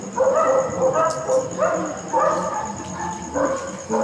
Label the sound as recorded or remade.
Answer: recorded